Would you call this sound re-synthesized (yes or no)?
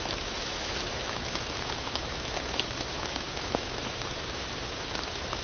yes